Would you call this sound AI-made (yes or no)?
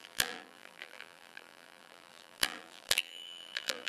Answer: yes